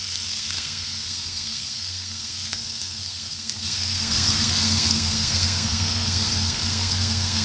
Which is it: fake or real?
fake